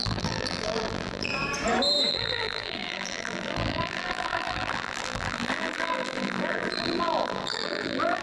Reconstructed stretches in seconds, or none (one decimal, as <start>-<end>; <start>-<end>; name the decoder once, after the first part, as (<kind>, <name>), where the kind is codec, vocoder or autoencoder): 0.0-1.3 (vocoder, BigVGAN v2); 2.1-8.2